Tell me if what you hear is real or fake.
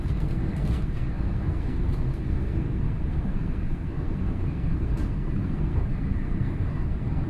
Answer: fake